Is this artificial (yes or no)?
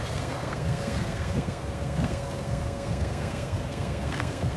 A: yes